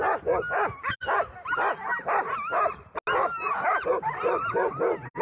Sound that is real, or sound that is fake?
real